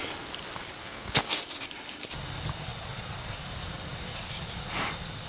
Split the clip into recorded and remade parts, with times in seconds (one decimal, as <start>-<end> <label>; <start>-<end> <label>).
0.0-0.8 recorded; 0.8-1.4 remade; 1.4-5.3 recorded